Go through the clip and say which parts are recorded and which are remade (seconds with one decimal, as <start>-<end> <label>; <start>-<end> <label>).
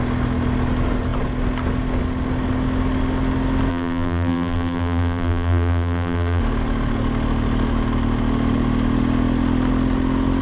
0.0-3.7 recorded; 3.7-6.4 remade; 6.4-10.4 recorded